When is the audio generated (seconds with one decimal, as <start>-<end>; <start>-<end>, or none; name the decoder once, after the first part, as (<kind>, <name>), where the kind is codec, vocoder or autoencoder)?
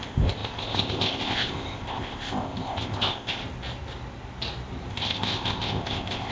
0.0-3.4 (codec, ZipCodec); 4.9-6.3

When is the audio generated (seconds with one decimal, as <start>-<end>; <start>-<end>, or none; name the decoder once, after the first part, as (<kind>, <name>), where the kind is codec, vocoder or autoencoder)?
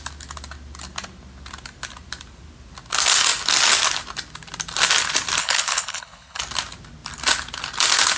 5.4-6.4 (codec, HILCodec)